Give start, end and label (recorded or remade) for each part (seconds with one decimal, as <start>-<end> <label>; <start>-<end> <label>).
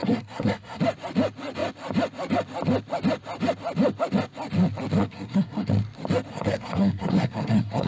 0.0-0.8 remade; 0.8-5.0 recorded; 5.0-5.7 remade; 5.7-6.3 recorded; 6.3-7.9 remade